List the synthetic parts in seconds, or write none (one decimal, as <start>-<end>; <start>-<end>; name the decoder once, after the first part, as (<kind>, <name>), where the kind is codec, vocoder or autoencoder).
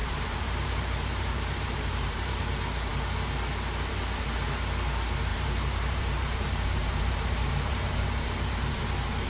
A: 0.0-2.4 (vocoder, BigVGAN v2); 5.3-8.8